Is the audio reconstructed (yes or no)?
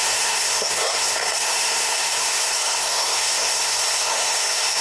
yes